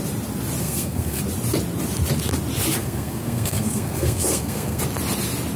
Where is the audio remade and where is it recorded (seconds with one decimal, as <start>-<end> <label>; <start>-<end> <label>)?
0.0-0.6 recorded; 0.6-1.2 remade; 1.2-2.8 recorded; 2.8-4.8 remade; 4.8-5.6 recorded